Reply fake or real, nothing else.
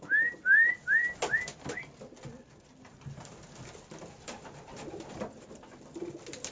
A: real